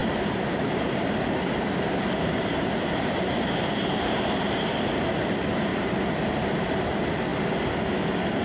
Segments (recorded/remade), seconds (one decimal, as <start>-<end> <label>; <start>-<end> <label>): 0.0-5.0 remade; 5.0-5.7 recorded; 5.7-6.5 remade; 6.5-8.4 recorded